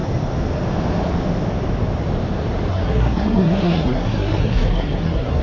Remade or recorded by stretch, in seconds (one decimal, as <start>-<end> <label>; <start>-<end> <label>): 0.0-2.7 recorded; 2.7-5.4 remade